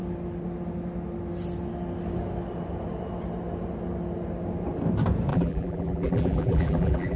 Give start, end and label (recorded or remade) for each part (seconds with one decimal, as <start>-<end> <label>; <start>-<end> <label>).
0.0-5.3 recorded; 5.3-7.2 remade